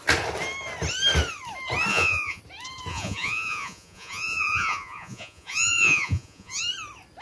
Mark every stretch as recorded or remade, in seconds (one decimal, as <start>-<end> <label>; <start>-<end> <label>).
0.0-1.9 recorded; 1.9-2.4 remade; 2.4-2.9 recorded; 2.9-6.6 remade; 6.6-7.2 recorded